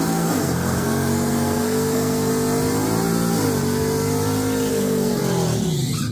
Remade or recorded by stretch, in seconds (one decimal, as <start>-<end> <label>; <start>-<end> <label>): 0.0-2.3 remade; 2.3-4.7 recorded; 4.7-5.2 remade; 5.2-6.1 recorded